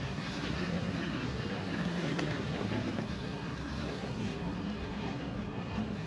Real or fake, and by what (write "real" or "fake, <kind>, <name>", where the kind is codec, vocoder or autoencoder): fake, codec, SNAC